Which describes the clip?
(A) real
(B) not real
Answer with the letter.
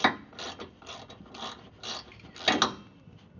A